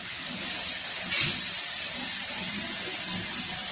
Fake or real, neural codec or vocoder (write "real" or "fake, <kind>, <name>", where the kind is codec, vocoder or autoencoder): real